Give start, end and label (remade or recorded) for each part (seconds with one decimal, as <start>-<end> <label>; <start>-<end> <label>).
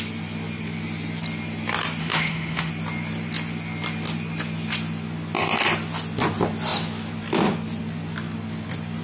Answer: 0.0-2.0 recorded; 2.0-2.7 remade; 2.7-9.0 recorded